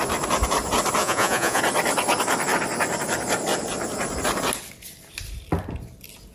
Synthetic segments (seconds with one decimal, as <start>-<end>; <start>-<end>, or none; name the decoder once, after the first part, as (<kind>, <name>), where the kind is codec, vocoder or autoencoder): 1.0-1.6 (vocoder, Vocos)